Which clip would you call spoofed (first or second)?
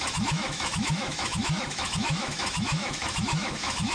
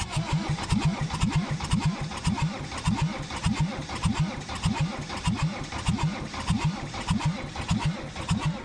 first